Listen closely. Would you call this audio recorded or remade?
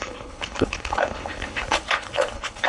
remade